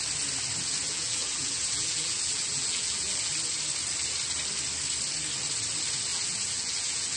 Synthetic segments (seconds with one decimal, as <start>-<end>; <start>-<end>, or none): 0.8-3.3; 6.1-7.2